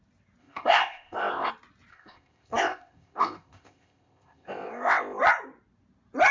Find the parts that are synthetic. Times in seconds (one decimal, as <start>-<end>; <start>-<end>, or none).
0.4-1.5; 1.9-5.2

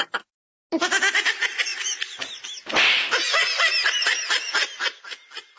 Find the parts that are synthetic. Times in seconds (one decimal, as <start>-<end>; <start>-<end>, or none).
none

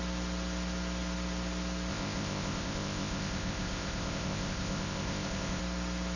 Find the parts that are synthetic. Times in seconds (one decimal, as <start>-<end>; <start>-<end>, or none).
1.9-5.6

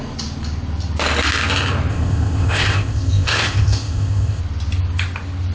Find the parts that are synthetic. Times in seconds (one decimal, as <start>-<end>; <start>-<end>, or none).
1.9-4.4